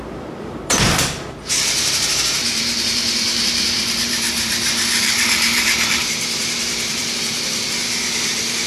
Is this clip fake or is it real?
fake